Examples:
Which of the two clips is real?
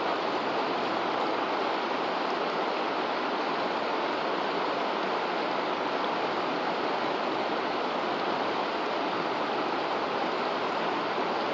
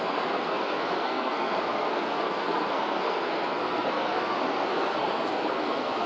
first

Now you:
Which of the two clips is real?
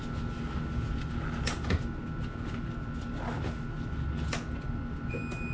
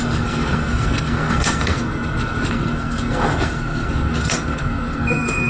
first